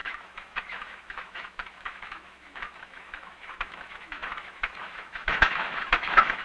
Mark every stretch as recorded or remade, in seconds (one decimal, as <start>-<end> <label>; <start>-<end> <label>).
0.0-6.4 remade